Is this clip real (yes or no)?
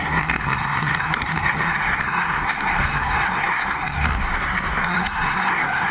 no